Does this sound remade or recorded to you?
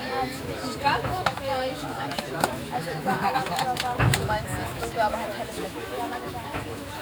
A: remade